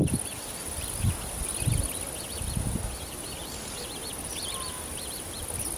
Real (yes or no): yes